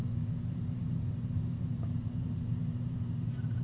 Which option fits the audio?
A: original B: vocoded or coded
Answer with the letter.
B